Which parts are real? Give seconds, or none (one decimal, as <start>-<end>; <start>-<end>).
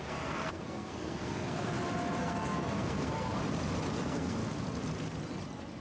1.7-2.2; 3.4-4.0; 4.4-5.8